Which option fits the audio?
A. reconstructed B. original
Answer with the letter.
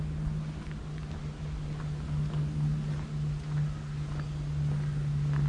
B